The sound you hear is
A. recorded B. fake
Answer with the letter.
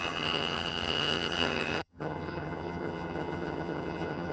B